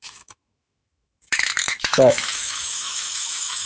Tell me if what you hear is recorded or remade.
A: remade